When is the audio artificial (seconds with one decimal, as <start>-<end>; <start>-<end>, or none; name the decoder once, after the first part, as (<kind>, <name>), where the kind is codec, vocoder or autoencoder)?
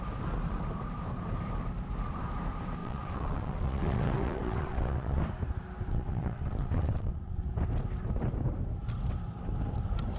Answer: 2.8-5.2 (vocoder, WaveNeXt); 5.9-7.4